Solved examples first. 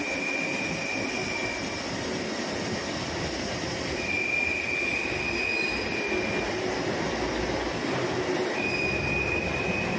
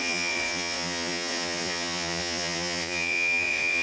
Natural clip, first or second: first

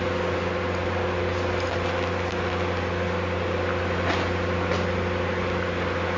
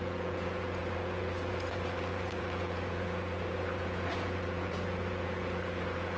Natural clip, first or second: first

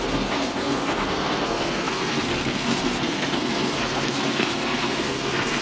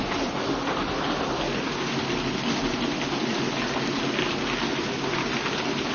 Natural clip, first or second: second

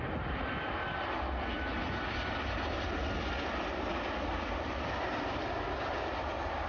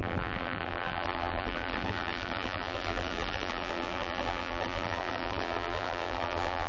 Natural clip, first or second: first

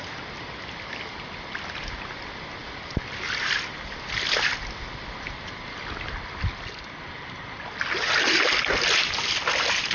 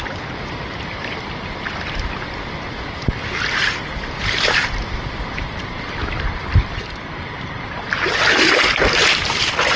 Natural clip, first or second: first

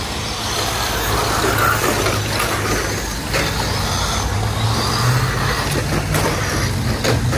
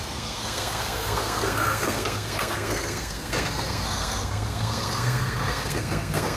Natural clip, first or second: first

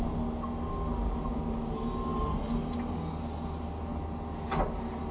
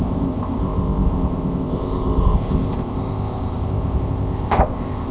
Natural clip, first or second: first